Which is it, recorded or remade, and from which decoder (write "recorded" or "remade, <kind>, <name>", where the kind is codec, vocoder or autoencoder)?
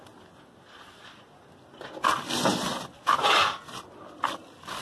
recorded